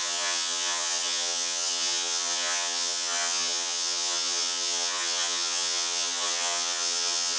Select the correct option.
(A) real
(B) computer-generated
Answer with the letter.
B